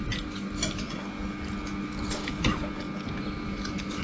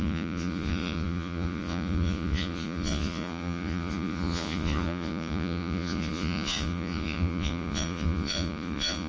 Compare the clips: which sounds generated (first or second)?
second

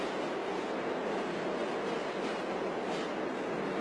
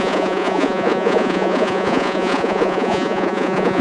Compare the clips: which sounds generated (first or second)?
second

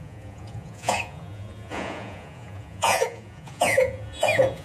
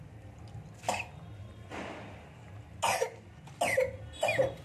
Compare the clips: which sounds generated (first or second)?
first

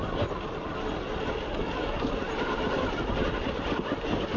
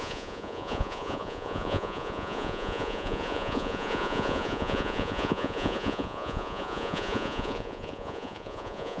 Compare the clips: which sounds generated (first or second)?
second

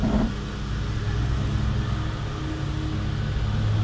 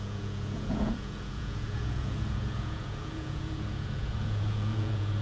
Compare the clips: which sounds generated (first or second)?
second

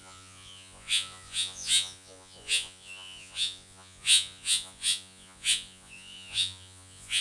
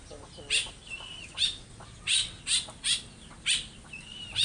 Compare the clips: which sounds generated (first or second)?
first